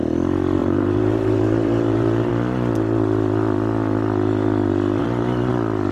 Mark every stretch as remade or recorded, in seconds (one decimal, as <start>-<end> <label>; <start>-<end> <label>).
0.0-0.6 recorded; 0.6-2.3 remade; 2.3-5.0 recorded; 5.0-5.5 remade; 5.5-5.9 recorded